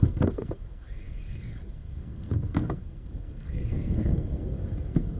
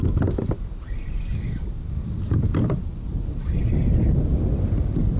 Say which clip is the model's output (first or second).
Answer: first